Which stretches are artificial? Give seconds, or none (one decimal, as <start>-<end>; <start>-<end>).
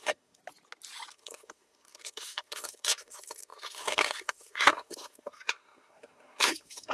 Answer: 0.0-0.4; 1.1-6.9